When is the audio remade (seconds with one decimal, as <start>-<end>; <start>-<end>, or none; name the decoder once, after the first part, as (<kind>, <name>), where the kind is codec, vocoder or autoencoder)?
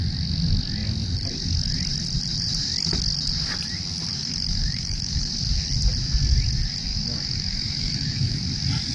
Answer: 4.2-5.3 (autoencoder, DAC-VAE); 6.9-8.4